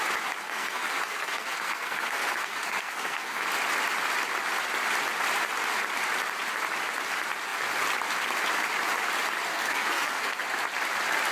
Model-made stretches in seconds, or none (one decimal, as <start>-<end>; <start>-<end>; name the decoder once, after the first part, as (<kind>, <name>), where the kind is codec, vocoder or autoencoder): 0.4-3.4 (codec, SNAC); 9.5-10.4